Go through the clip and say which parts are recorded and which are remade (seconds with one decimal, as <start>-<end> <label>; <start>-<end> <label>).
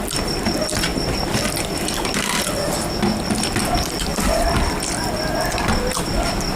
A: 0.0-6.6 recorded